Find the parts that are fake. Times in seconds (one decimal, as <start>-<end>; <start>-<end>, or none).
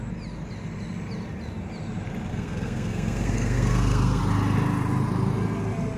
2.3-4.2